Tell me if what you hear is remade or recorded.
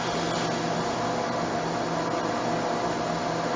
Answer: recorded